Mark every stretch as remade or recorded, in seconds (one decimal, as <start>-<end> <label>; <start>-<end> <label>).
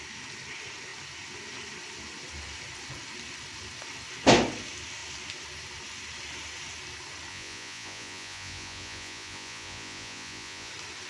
0.0-7.3 recorded; 7.3-10.7 remade; 10.7-11.1 recorded